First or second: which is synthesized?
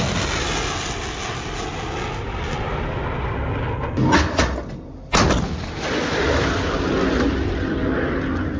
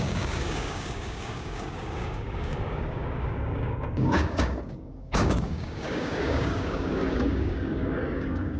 second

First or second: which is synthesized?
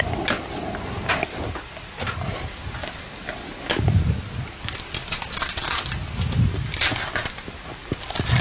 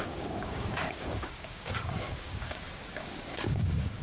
second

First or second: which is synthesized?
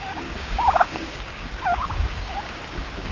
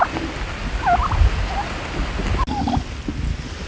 first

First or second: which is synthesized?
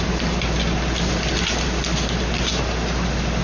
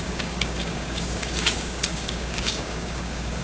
second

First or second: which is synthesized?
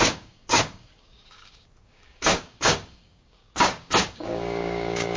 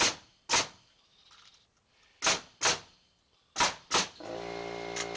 first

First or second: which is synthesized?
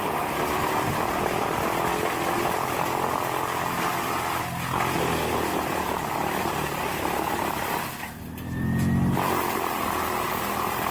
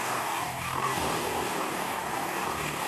second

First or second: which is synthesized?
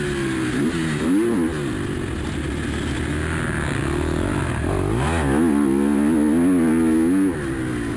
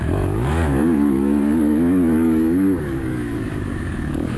second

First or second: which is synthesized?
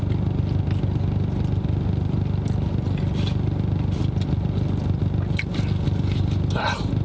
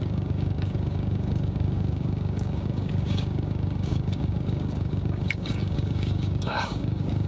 second